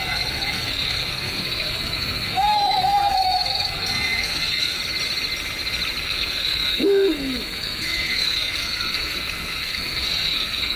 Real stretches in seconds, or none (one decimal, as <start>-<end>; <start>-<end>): 4.8-6.0